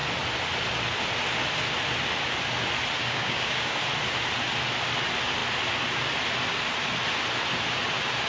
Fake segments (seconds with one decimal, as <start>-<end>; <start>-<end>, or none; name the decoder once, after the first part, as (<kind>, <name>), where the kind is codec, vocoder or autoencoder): 3.0-3.8 (codec, DAC)